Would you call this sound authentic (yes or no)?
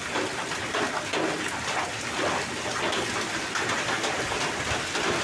yes